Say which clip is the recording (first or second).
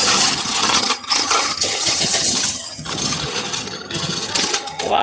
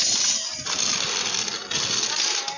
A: second